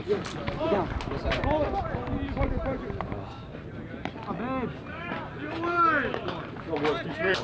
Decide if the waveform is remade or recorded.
recorded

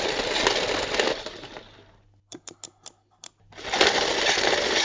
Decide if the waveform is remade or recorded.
recorded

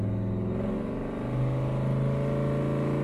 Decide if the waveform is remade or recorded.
recorded